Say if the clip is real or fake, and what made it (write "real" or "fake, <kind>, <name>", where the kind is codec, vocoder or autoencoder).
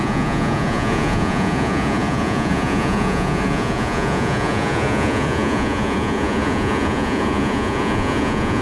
fake, vocoder, Vocos